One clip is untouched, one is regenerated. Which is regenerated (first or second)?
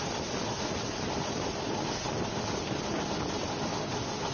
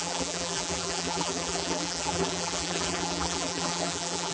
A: second